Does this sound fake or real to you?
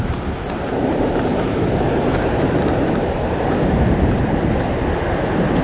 fake